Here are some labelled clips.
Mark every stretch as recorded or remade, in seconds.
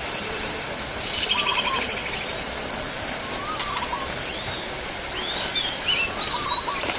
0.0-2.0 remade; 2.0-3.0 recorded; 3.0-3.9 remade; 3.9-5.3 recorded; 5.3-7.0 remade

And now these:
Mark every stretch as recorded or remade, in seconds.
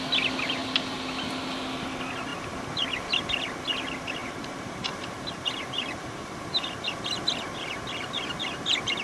0.0-4.2 recorded; 4.2-6.9 remade; 6.9-9.0 recorded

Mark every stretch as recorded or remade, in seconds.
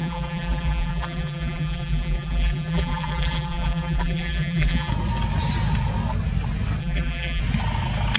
0.0-4.9 remade; 4.9-6.8 recorded; 6.8-7.4 remade; 7.4-8.2 recorded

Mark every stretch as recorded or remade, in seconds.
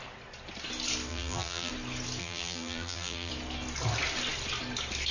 0.0-1.1 recorded; 1.1-1.7 remade; 1.7-2.2 recorded; 2.2-3.3 remade; 3.3-5.1 recorded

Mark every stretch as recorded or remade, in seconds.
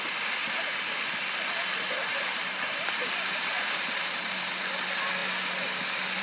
0.0-2.1 recorded; 2.1-4.7 remade; 4.7-6.2 recorded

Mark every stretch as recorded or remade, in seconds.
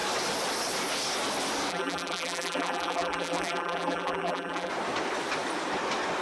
0.0-1.7 recorded; 1.7-4.7 remade; 4.7-6.2 recorded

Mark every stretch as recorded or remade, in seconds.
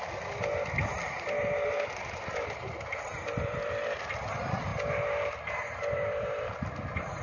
0.0-4.7 remade; 4.7-5.5 recorded; 5.5-7.2 remade